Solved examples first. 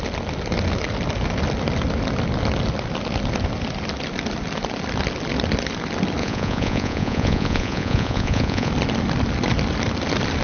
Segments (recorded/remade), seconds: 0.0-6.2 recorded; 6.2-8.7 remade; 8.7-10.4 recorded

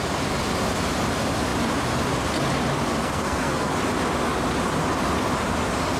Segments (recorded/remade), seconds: 0.0-3.0 recorded; 3.0-3.7 remade; 3.7-6.0 recorded

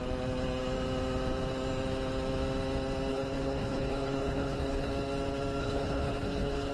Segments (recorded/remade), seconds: 0.0-3.1 recorded; 3.1-4.9 remade; 4.9-5.6 recorded; 5.6-6.7 remade

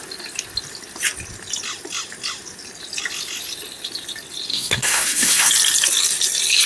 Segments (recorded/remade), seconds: 0.0-4.5 recorded; 4.5-5.5 remade; 5.5-6.7 recorded

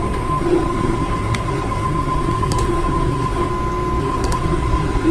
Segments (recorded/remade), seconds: 0.0-3.5 remade; 3.5-4.0 recorded; 4.0-5.1 remade

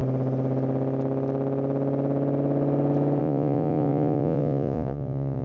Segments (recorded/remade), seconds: 0.0-3.2 recorded; 3.2-5.4 remade